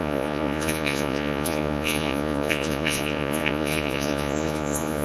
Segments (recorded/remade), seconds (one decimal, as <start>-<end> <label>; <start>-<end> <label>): 0.0-5.0 remade